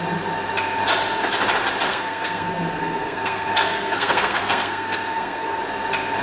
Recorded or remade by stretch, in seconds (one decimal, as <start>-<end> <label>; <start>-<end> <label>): 0.0-1.9 recorded; 1.9-5.6 remade; 5.6-6.2 recorded